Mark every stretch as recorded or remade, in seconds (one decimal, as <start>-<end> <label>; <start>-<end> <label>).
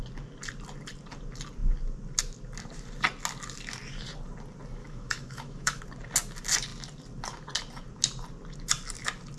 0.0-4.8 recorded; 4.8-5.8 remade; 5.8-9.4 recorded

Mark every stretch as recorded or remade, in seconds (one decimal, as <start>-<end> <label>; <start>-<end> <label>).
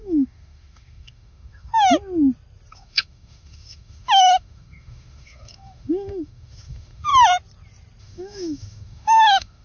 0.0-1.7 remade; 1.7-2.7 recorded; 2.7-7.1 remade; 7.1-8.0 recorded; 8.0-9.6 remade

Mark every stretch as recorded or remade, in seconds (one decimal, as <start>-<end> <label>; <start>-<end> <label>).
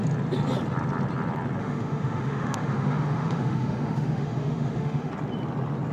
0.0-1.6 recorded; 1.6-5.1 remade; 5.1-5.9 recorded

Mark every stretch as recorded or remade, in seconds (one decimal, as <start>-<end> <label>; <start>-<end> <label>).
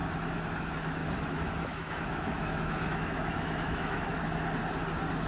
0.0-1.0 recorded; 1.0-4.2 remade; 4.2-5.3 recorded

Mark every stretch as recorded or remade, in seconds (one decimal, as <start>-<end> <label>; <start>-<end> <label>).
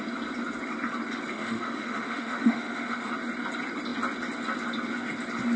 0.0-1.3 recorded; 1.3-3.1 remade; 3.1-5.6 recorded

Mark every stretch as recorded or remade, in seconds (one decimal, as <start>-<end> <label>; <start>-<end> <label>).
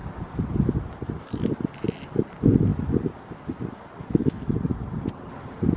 0.0-5.8 recorded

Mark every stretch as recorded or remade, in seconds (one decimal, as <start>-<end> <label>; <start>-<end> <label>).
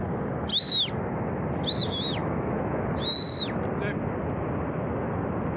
0.0-2.2 recorded; 2.2-2.8 remade; 2.8-5.6 recorded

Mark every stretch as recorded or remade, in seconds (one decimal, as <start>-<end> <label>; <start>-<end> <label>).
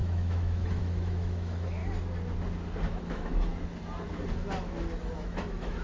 0.0-1.8 remade; 1.8-2.9 recorded; 2.9-3.5 remade; 3.5-5.0 recorded; 5.0-5.8 remade